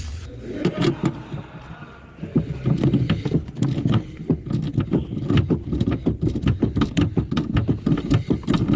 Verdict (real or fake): real